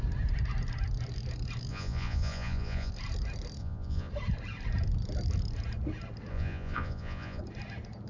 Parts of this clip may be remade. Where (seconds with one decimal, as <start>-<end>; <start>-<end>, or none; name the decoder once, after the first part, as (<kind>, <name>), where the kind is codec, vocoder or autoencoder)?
1.7-2.9 (vocoder, Vocos); 3.6-4.1; 6.3-7.4